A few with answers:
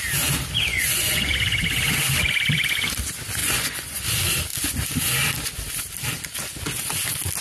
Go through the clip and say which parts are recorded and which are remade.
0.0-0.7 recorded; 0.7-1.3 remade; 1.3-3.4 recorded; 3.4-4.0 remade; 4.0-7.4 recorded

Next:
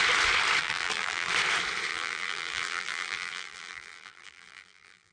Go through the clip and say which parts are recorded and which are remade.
0.0-0.6 recorded; 0.6-1.3 remade; 1.3-1.9 recorded; 1.9-5.1 remade

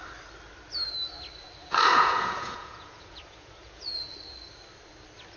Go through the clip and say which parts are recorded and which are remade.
0.0-1.6 recorded; 1.6-4.0 remade; 4.0-5.4 recorded

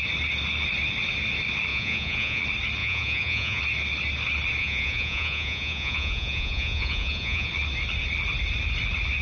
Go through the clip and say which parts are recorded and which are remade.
0.0-1.7 recorded; 1.7-2.4 remade; 2.4-2.8 recorded; 2.8-3.6 remade; 3.6-4.6 recorded; 4.6-7.5 remade; 7.5-9.2 recorded

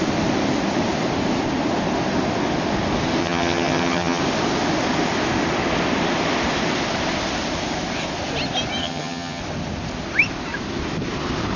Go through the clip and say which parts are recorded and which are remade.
0.0-3.2 recorded; 3.2-4.2 remade; 4.2-8.8 recorded; 8.8-9.4 remade; 9.4-11.6 recorded

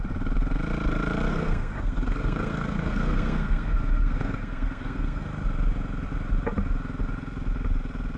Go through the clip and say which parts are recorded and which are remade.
0.0-1.3 recorded; 1.3-5.2 remade; 5.2-8.2 recorded

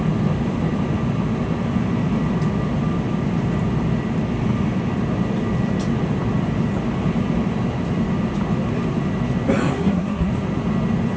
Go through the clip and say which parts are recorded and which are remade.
0.0-9.7 recorded; 9.7-10.3 remade; 10.3-11.2 recorded